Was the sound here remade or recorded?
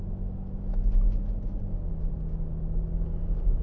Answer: recorded